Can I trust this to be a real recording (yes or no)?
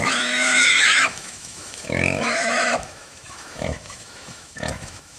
no